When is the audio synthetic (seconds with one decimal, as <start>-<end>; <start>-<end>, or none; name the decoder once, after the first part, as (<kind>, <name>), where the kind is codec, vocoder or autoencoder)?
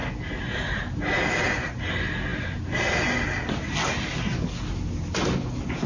none